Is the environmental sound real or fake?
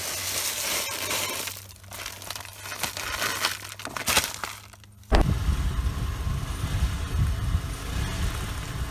real